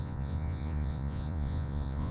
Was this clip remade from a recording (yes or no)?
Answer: yes